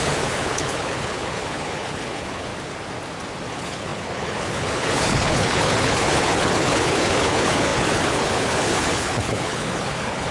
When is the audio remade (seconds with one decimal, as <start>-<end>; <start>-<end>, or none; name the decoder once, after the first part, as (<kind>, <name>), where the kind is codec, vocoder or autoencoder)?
0.0-2.5 (codec, HILCodec); 3.5-10.3